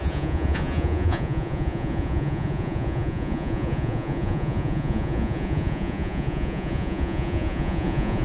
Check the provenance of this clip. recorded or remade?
remade